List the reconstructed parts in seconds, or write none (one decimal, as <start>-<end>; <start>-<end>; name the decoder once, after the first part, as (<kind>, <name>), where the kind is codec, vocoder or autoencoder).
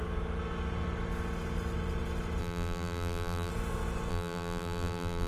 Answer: 2.4-3.5 (vocoder, BigVGAN v2); 4.1-5.3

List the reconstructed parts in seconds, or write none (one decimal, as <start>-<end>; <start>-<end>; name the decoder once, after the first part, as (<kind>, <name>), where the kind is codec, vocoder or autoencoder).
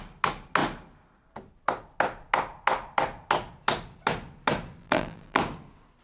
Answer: 4.8-5.4 (vocoder, BigVGAN v2)